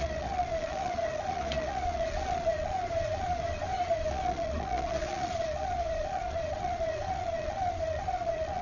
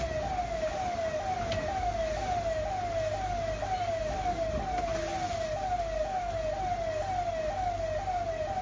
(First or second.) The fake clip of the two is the first